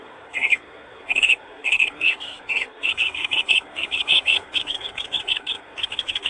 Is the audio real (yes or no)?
no